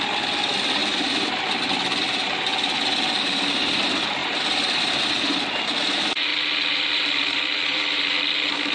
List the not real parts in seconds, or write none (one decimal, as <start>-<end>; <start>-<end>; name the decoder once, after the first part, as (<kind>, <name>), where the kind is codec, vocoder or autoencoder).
0.8-1.4 (vocoder, BigVGAN v2); 2.5-3.7; 4.2-5.0; 6.3-8.2